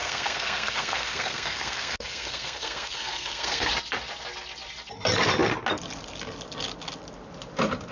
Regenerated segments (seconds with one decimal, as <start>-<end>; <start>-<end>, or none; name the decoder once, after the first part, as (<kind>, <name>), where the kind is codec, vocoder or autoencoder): 0.0-3.7 (codec, SNAC)